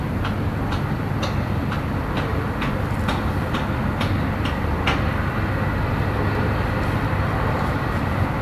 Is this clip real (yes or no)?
yes